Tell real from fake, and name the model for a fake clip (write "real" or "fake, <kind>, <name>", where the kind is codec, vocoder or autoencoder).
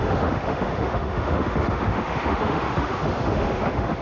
fake, autoencoder, DAC-VAE